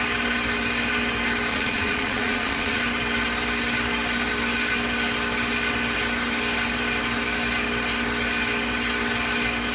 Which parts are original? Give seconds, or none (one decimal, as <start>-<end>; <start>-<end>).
0.0-1.5; 2.8-9.7